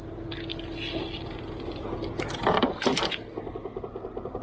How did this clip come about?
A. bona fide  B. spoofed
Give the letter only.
A